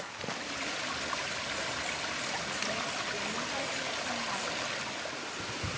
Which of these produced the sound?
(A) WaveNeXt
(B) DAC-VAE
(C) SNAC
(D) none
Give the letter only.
D